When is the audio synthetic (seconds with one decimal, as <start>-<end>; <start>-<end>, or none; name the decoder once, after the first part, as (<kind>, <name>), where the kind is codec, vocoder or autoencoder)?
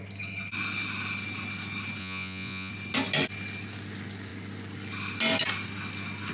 2.0-2.7 (vocoder, Vocos)